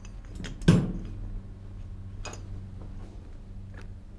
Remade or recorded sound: recorded